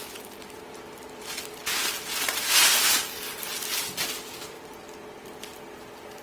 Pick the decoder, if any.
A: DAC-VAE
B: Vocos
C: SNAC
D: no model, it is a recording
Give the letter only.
D